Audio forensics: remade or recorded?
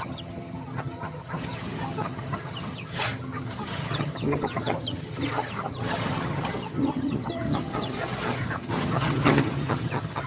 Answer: remade